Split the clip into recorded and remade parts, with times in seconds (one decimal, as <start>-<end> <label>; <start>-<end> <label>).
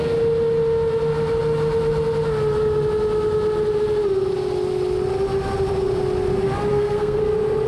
0.0-6.7 recorded; 6.7-7.2 remade; 7.2-7.7 recorded